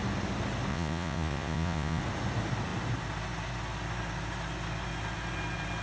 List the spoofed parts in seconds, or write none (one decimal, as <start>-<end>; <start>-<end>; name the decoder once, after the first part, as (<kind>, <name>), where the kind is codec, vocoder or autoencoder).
0.7-2.0 (vocoder, Vocos)